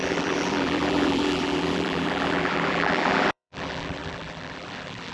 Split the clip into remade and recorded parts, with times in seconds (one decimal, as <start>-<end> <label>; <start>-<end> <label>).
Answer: 0.0-5.1 remade